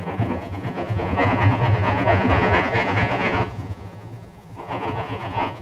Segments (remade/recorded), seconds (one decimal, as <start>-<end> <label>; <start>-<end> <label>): 0.0-5.6 remade